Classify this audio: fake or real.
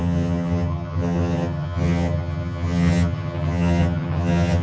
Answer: fake